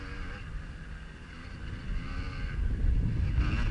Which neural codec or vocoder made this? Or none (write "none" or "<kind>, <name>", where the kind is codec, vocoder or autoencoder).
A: none